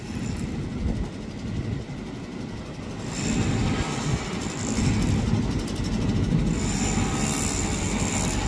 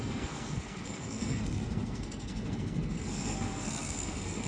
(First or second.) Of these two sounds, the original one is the first